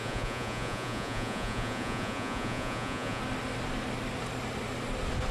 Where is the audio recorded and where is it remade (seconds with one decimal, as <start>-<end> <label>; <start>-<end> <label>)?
0.0-3.2 remade; 3.2-5.3 recorded